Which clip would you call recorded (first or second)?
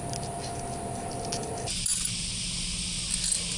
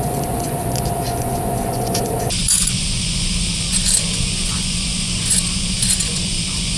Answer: first